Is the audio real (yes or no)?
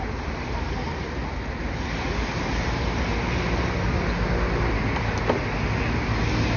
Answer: yes